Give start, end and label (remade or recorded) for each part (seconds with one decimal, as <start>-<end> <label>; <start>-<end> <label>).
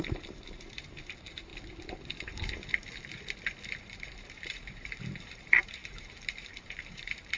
0.0-1.5 remade; 1.5-3.8 recorded; 3.8-7.4 remade